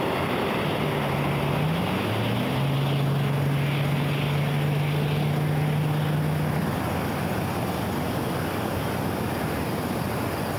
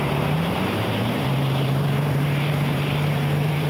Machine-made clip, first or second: second